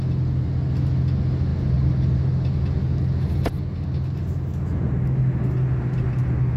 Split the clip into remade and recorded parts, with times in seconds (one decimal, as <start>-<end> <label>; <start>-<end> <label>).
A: 0.0-6.6 recorded